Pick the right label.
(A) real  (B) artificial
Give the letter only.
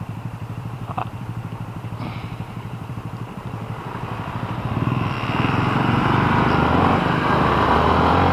B